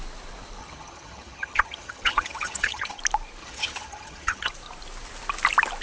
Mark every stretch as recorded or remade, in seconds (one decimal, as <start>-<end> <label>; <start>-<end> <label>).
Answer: 0.0-0.6 recorded; 0.6-3.0 remade; 3.0-3.4 recorded; 3.4-4.5 remade; 4.5-5.8 recorded